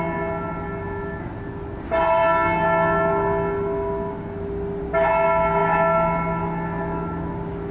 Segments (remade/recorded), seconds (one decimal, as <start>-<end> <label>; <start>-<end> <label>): 0.0-7.7 recorded